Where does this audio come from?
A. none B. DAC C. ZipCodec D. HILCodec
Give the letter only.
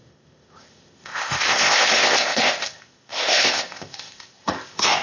C